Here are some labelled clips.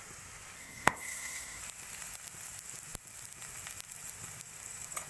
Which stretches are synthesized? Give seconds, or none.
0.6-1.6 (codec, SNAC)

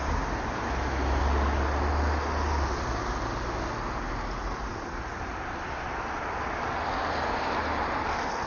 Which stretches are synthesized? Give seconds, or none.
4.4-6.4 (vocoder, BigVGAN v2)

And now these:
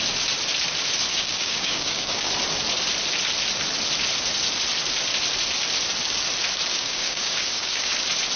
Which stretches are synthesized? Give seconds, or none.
1.1-2.3 (codec, DAC); 6.7-7.9

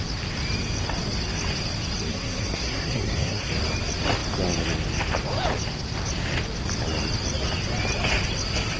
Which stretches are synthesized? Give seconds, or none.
2.1-3.5 (codec, SNAC)

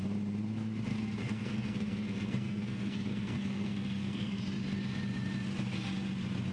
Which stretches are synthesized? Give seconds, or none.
0.9-4.4 (codec, SNAC)

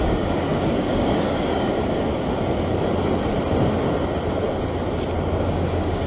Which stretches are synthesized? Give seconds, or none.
0.0-1.7 (codec, DAC); 5.4-6.1